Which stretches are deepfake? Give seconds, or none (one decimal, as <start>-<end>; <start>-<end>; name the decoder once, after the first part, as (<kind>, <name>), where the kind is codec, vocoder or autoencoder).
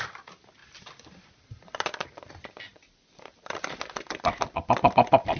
none